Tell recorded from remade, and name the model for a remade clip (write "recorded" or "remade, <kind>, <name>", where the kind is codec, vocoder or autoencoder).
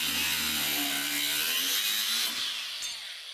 recorded